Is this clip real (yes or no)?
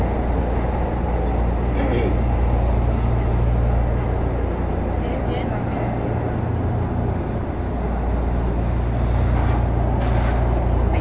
yes